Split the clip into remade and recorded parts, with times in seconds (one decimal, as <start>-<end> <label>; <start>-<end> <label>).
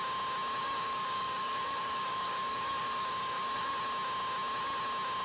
0.0-0.6 recorded; 0.6-3.7 remade; 3.7-5.2 recorded